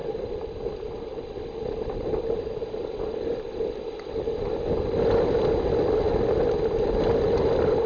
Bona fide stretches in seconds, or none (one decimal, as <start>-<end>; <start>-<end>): 0.0-7.9